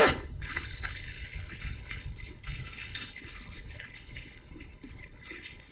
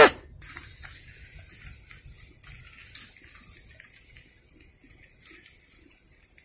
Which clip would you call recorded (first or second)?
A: second